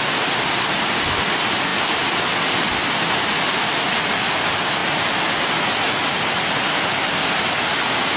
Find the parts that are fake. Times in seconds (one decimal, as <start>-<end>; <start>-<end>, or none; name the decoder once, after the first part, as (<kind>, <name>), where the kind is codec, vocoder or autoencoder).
none